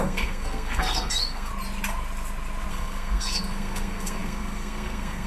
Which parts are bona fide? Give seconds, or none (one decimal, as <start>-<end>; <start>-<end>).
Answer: 1.5-2.7